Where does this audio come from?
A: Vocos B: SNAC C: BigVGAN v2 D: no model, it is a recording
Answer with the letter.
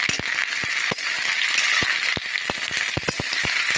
D